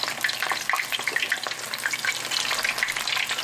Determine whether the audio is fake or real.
real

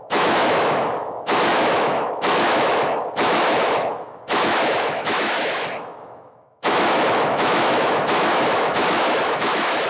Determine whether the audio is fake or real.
fake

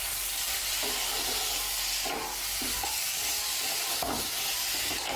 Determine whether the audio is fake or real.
real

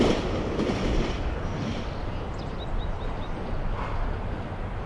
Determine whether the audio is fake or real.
real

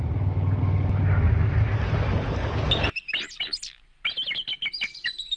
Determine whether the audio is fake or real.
real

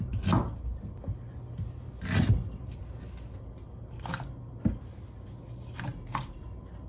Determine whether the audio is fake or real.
real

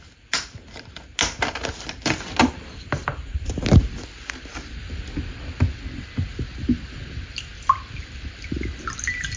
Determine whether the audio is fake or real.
real